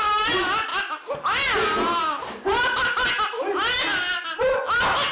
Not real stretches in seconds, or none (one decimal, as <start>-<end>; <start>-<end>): none